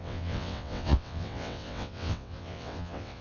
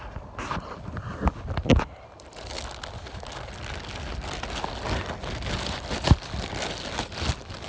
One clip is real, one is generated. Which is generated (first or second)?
first